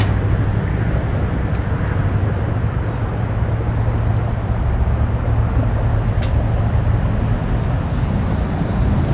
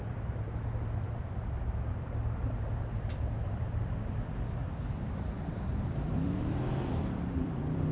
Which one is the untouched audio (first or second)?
first